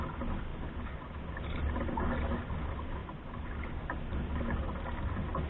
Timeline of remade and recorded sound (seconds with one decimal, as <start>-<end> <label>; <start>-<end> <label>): 0.0-5.5 recorded